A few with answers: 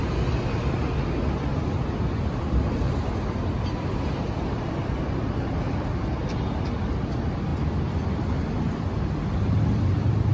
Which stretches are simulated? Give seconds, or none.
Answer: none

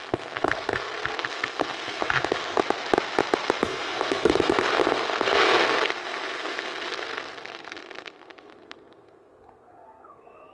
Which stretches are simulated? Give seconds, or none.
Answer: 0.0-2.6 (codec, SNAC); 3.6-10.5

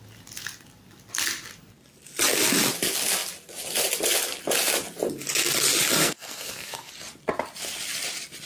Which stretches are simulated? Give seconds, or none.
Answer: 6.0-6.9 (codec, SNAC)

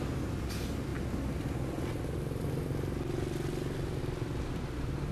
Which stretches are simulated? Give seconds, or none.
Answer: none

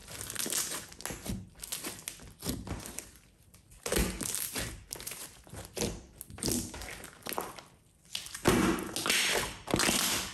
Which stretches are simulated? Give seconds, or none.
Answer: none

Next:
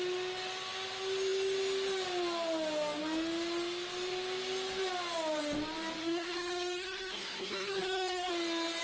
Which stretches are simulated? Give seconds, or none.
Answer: 6.0-8.3 (codec, SNAC)

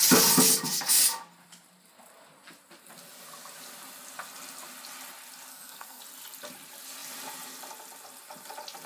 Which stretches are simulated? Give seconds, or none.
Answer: 5.5-6.0 (codec, SNAC)